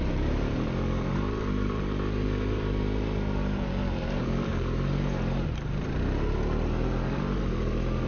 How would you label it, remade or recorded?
remade